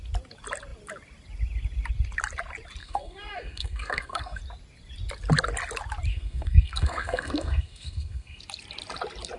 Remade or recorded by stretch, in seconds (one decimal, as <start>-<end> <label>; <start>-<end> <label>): 0.0-2.8 recorded; 2.8-4.4 remade; 4.4-6.1 recorded; 6.1-8.4 remade; 8.4-9.4 recorded